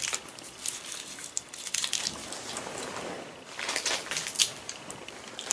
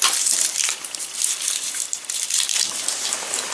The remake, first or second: second